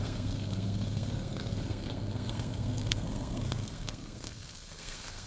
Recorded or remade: remade